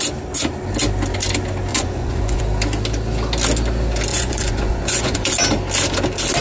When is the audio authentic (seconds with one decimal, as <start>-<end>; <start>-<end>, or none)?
0.0-1.7; 2.4-4.1; 5.3-6.4